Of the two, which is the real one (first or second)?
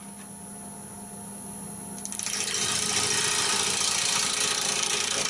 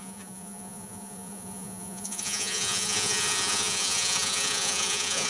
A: first